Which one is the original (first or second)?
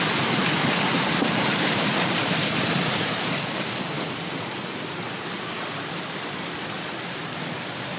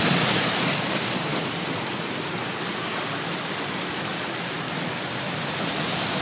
second